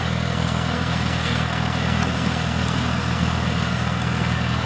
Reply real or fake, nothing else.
fake